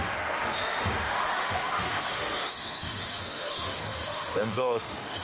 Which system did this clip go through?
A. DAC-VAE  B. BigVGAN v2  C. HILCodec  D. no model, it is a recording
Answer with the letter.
A